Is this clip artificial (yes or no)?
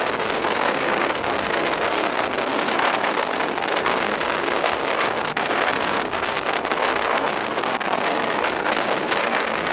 yes